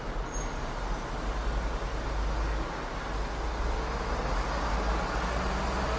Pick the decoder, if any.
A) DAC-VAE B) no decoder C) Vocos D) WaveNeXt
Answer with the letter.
B